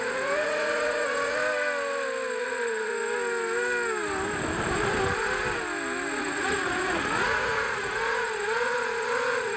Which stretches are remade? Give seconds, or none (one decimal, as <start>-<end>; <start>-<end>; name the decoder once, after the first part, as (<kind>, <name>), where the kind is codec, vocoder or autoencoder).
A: 0.0-1.4 (vocoder, Vocos); 2.4-2.9; 6.2-9.6